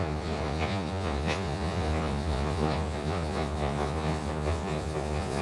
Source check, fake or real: fake